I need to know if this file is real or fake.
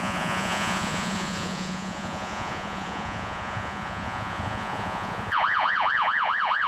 fake